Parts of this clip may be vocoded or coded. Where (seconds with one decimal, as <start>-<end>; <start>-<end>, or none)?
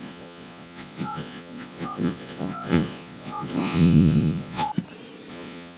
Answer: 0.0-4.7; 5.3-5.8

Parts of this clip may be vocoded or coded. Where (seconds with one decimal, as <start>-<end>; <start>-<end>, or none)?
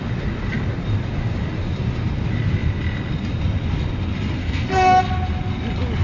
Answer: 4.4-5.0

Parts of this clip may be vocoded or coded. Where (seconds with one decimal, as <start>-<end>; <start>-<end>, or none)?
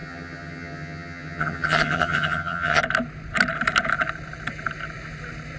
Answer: 0.0-2.8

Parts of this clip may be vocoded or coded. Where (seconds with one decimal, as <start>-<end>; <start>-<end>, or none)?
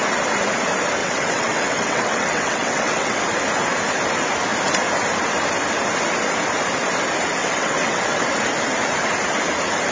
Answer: 1.0-3.2; 7.4-8.2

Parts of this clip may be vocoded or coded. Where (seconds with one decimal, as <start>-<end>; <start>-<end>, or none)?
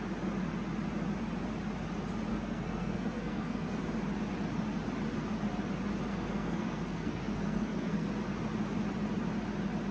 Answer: 2.3-3.8; 6.1-8.1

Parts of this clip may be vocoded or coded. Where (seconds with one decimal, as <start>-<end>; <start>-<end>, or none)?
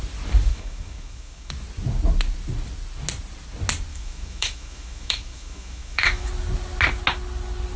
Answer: 0.5-1.5; 3.9-6.3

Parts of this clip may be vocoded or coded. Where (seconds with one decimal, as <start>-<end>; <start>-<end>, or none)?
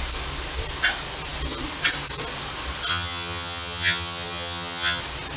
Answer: 2.9-5.0